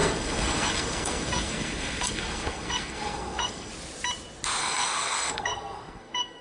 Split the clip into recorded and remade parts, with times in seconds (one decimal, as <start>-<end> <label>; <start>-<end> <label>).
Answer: 0.0-3.7 remade; 3.7-4.6 recorded; 4.6-6.4 remade